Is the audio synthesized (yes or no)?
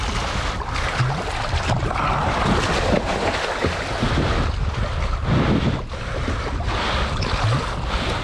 no